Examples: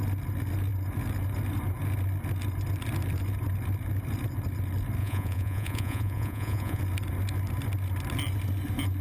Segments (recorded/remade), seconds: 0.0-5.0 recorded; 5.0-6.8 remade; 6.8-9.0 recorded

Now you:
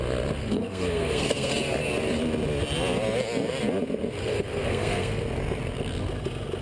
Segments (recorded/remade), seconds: 0.0-0.4 recorded; 0.4-1.5 remade; 1.5-4.2 recorded; 4.2-5.2 remade; 5.2-6.6 recorded